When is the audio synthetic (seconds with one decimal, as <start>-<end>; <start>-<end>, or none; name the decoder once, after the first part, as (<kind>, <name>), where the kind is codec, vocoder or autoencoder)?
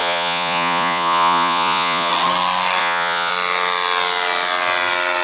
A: 0.0-2.1 (vocoder, Vocos); 2.8-3.3